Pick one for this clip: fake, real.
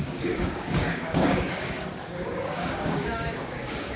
fake